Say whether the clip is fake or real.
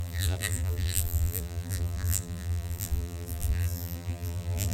fake